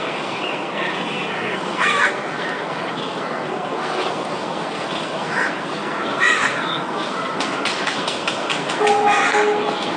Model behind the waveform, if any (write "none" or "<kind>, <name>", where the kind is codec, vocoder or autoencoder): codec, SNAC